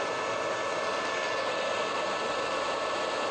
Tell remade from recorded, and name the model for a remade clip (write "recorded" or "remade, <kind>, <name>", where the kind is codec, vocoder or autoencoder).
recorded